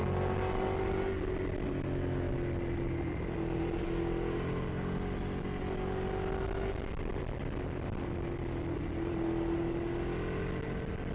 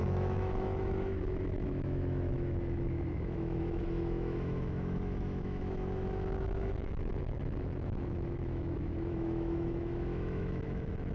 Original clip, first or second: first